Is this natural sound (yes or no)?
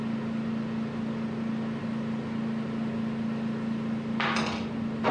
yes